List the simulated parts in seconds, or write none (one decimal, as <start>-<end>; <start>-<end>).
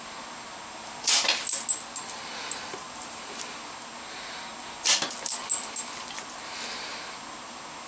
none